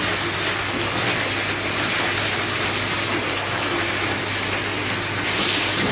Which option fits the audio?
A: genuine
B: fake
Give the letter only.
A